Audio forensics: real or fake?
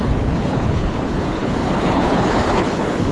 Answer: fake